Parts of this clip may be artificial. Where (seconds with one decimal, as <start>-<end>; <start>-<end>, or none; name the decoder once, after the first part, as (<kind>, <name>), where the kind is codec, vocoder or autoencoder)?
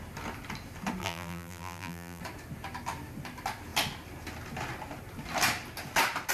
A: 1.0-2.2 (vocoder, BigVGAN v2)